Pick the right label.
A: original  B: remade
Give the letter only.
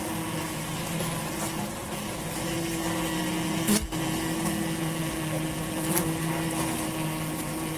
A